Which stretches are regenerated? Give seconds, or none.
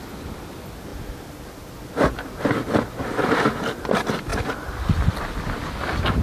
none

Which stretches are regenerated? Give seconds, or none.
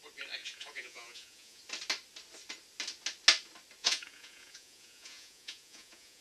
0.4-1.6 (vocoder, Vocos); 3.8-6.2